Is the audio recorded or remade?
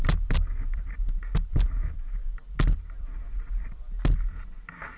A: recorded